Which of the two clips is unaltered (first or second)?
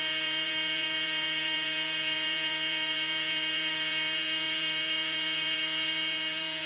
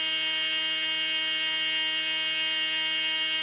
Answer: second